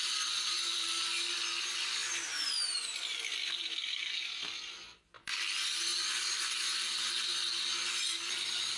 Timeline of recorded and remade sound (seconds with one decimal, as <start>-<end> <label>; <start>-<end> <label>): 0.0-8.8 remade

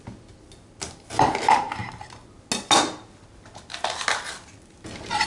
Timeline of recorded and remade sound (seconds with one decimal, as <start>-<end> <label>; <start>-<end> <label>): 0.0-5.3 recorded

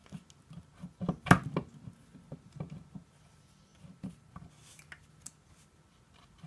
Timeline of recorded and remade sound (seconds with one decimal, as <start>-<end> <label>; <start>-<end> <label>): 0.0-6.5 recorded

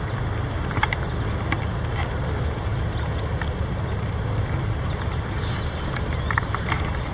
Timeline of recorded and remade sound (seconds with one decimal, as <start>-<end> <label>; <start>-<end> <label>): 0.0-7.1 recorded

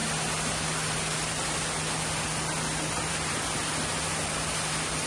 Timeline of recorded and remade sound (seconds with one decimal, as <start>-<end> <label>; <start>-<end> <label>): 0.0-5.1 recorded

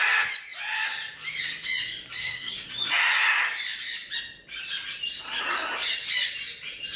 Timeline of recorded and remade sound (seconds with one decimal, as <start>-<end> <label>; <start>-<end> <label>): 0.0-2.2 recorded; 2.2-2.7 remade; 2.7-7.0 recorded